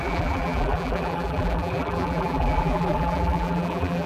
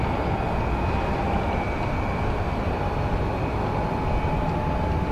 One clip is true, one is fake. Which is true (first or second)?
second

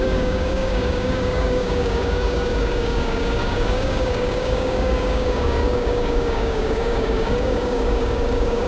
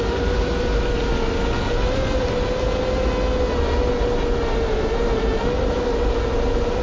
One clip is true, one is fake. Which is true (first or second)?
second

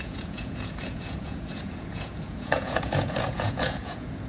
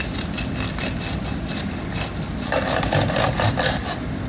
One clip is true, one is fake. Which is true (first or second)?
second